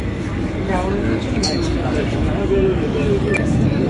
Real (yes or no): no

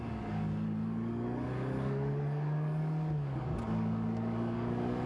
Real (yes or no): no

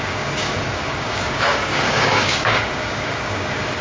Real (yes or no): no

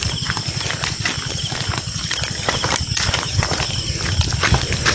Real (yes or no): yes